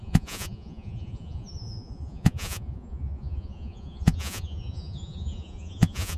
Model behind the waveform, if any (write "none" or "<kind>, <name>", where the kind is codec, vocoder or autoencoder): vocoder, Vocos